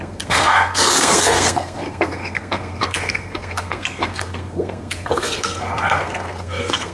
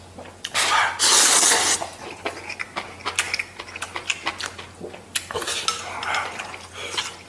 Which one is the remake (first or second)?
first